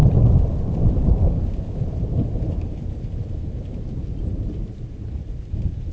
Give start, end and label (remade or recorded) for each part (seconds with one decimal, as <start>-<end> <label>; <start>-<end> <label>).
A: 0.0-1.1 remade; 1.1-2.1 recorded; 2.1-5.9 remade